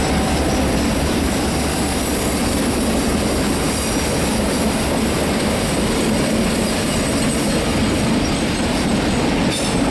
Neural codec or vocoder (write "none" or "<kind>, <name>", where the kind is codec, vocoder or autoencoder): none